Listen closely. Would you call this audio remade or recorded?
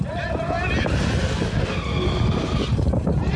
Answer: recorded